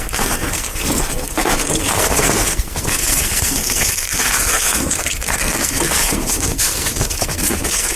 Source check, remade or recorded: remade